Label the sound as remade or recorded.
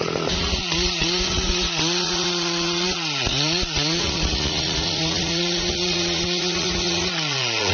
remade